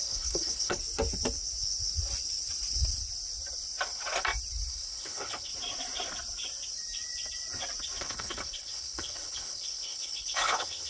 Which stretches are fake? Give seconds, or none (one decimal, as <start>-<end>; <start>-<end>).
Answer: 0.0-0.8; 4.7-5.5; 8.0-10.9